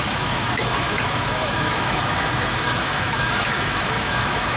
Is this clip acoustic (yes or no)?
no